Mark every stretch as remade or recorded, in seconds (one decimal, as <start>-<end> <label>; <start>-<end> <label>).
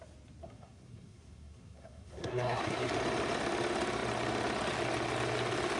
0.0-0.4 recorded; 0.4-2.9 remade; 2.9-5.8 recorded